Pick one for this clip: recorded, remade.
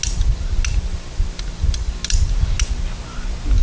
recorded